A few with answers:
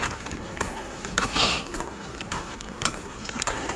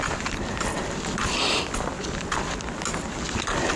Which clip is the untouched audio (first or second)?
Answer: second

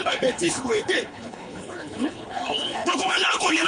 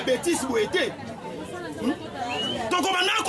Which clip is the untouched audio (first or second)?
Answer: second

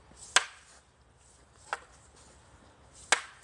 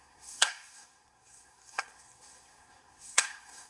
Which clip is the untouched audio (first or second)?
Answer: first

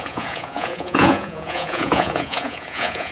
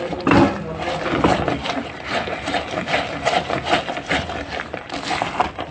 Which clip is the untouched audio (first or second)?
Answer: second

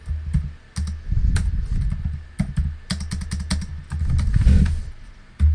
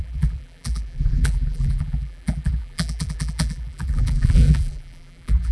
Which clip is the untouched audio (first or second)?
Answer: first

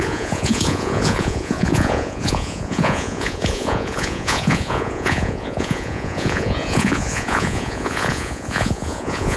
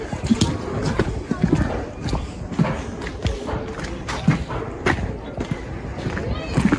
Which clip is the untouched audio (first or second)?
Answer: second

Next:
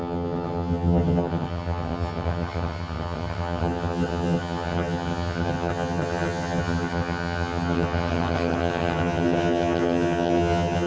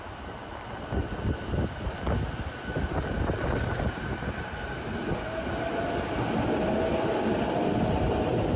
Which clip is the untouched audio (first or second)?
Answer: second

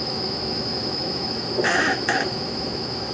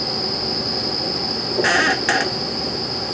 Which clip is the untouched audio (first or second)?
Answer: second